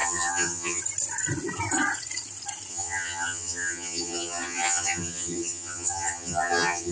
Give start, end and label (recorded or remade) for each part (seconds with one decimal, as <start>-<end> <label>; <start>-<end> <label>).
0.0-0.8 remade; 0.8-2.7 recorded; 2.7-6.9 remade